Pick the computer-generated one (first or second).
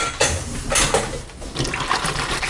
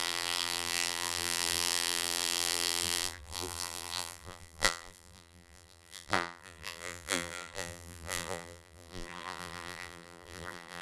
second